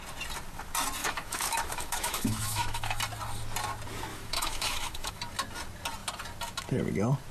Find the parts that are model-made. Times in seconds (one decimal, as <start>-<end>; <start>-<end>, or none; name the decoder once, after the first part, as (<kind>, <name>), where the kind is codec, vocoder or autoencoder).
1.0-3.0 (autoencoder, DAC-VAE); 4.1-5.2